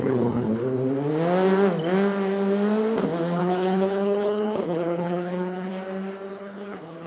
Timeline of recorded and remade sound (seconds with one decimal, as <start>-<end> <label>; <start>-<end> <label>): 0.0-0.5 remade; 0.5-3.4 recorded; 3.4-5.7 remade; 5.7-6.3 recorded; 6.3-7.1 remade